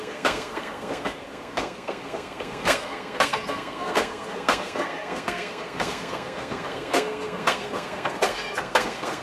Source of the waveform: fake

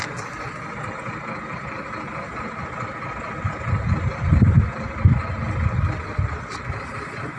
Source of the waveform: real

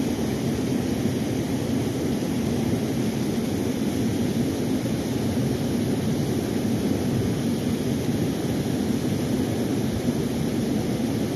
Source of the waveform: real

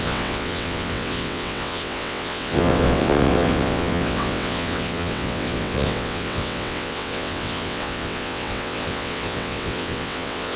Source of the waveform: fake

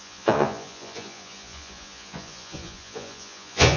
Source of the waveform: fake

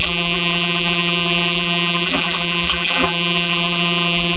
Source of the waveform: fake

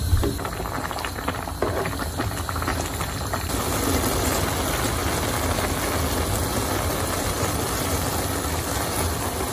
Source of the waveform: real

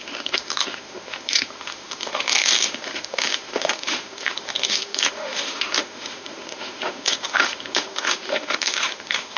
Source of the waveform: fake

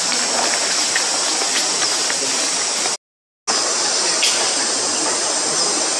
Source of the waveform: real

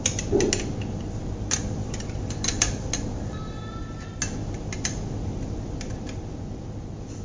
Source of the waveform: real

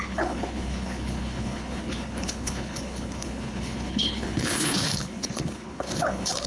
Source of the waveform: fake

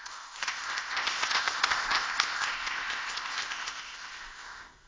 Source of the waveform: fake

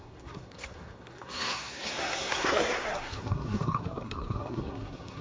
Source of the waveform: fake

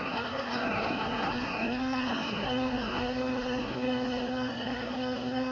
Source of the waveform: fake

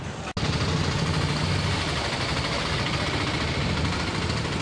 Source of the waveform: real